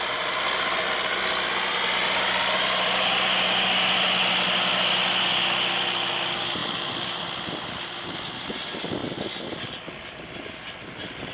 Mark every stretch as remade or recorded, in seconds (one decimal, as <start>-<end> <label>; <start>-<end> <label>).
0.0-11.3 recorded